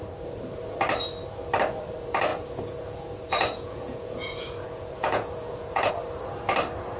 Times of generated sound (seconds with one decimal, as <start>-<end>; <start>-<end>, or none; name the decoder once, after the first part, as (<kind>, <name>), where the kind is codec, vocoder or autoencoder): 2.3-5.9 (vocoder, Vocos)